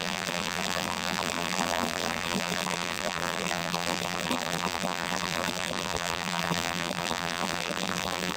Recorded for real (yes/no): no